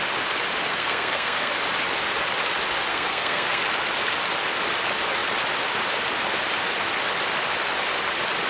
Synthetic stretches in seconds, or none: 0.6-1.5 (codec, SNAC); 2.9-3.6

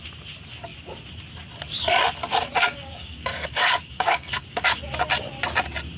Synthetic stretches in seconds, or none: 2.6-4.8 (codec, DAC)